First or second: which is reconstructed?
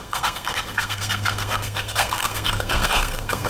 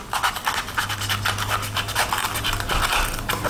first